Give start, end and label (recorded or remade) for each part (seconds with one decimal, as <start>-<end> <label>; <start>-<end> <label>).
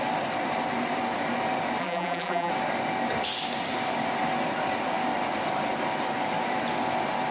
0.0-1.8 recorded; 1.8-2.5 remade; 2.5-7.3 recorded